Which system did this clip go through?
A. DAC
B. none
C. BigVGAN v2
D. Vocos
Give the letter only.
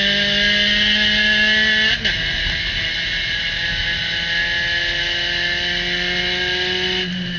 B